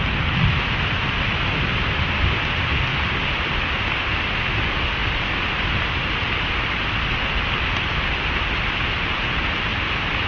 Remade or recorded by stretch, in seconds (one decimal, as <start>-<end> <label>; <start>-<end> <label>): 0.0-10.3 recorded